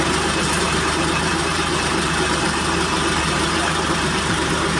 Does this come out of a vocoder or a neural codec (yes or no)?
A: yes